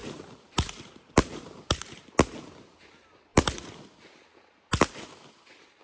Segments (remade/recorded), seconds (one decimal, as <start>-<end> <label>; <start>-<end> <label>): 0.0-2.1 remade; 2.1-5.8 recorded